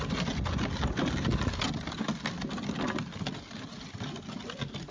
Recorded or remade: recorded